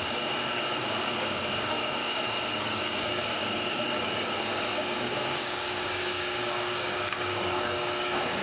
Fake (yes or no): yes